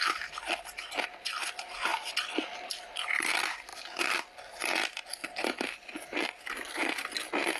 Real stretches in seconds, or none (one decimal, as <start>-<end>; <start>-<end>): 0.0-1.9; 2.7-7.6